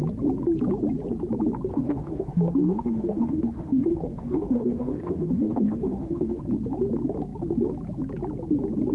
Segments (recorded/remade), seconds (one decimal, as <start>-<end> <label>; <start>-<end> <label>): 0.0-1.7 recorded; 1.7-6.4 remade; 6.4-8.9 recorded